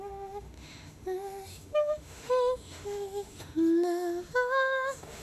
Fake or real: fake